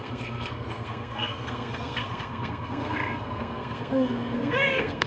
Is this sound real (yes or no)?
no